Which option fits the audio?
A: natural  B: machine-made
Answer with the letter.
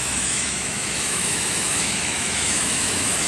B